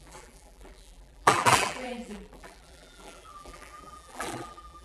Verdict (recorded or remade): remade